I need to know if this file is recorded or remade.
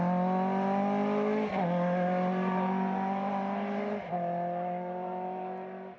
recorded